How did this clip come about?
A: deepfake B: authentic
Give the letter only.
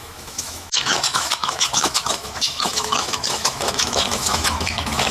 A